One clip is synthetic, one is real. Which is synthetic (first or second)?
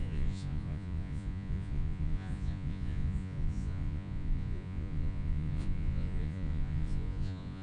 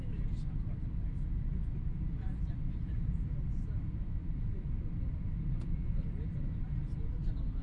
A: first